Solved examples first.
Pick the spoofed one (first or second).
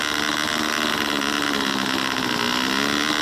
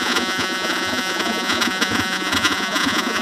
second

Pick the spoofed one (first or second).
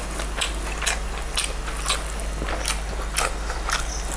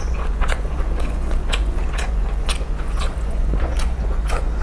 second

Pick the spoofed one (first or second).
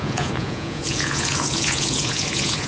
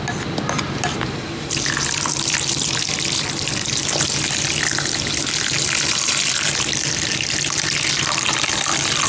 first